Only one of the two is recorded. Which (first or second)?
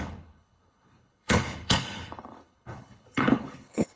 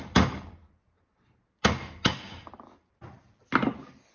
second